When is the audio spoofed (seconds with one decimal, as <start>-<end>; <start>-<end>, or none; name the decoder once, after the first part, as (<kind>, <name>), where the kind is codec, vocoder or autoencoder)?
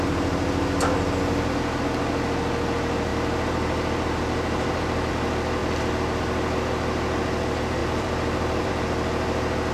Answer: 3.1-5.1 (vocoder, BigVGAN v2); 5.6-6.2; 7.8-8.7